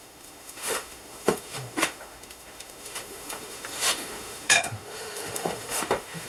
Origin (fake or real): fake